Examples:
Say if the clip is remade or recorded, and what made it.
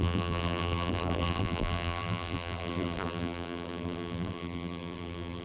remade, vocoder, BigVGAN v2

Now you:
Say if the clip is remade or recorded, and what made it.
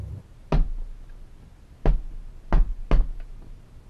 recorded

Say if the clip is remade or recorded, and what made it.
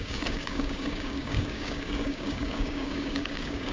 remade, codec, DAC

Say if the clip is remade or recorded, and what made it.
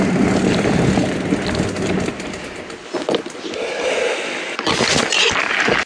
recorded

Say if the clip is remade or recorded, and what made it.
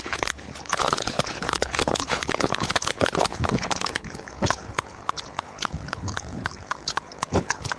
remade, codec, HILCodec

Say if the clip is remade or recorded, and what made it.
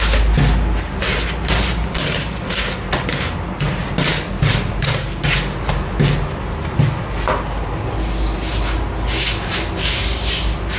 recorded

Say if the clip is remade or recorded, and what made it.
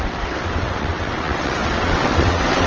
remade, vocoder, WaveNeXt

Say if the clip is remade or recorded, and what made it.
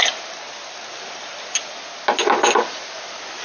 recorded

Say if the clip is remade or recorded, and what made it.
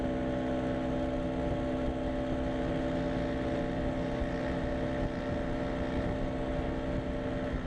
recorded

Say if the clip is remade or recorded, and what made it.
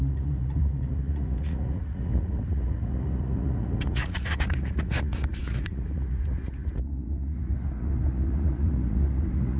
remade, vocoder, Vocos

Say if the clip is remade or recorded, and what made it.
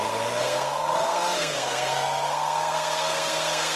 remade, codec, SNAC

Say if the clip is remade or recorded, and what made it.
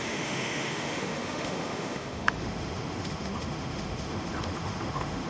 remade, autoencoder, DAC-VAE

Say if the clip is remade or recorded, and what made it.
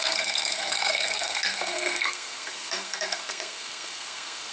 remade, codec, SNAC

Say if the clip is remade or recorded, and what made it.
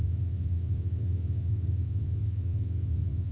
remade, vocoder, WaveNeXt